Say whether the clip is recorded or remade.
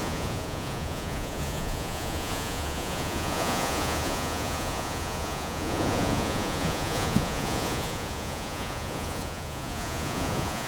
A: remade